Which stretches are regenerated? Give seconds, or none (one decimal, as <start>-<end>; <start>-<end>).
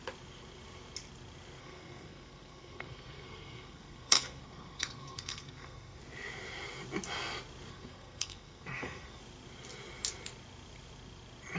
1.6-6.0; 7.7-9.2